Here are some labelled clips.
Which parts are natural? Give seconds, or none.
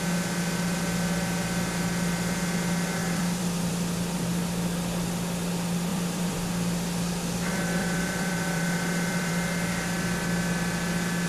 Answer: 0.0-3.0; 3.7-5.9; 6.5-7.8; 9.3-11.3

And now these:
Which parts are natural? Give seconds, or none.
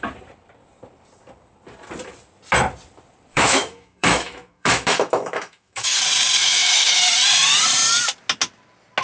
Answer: 0.0-3.3; 6.0-6.4; 7.0-9.0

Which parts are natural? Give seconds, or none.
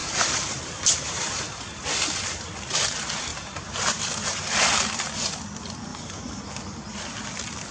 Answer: 1.3-3.3; 4.0-5.9; 6.4-7.7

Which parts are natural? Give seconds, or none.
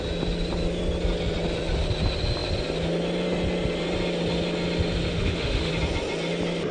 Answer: 0.0-5.1; 5.7-6.7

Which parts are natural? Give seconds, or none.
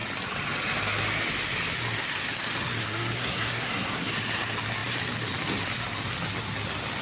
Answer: 0.0-2.8; 4.1-7.0